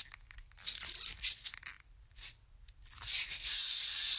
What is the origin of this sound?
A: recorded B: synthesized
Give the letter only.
A